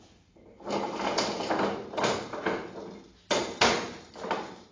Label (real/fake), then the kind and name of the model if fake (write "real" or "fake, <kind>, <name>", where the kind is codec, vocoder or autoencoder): real